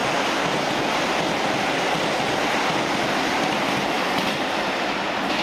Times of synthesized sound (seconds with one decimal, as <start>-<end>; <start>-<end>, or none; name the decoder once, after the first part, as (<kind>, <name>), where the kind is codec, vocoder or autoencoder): none